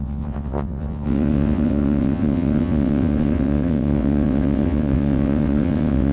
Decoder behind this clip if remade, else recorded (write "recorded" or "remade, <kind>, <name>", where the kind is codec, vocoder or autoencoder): remade, vocoder, WaveNeXt